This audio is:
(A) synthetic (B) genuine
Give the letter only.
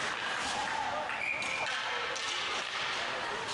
B